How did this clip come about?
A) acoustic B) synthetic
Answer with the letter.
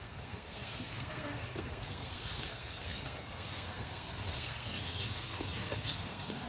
B